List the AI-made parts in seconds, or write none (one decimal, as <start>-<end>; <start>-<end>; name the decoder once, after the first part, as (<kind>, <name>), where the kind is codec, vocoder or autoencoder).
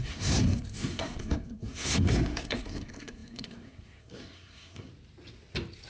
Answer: 0.0-4.9 (codec, SNAC)